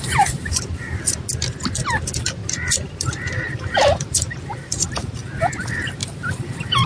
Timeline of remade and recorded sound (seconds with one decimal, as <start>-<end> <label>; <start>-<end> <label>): 0.0-0.5 recorded; 0.5-1.2 remade; 1.2-2.4 recorded; 2.4-5.4 remade; 5.4-6.0 recorded; 6.0-6.9 remade